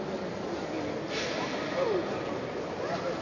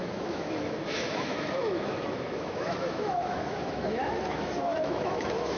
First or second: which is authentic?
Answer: first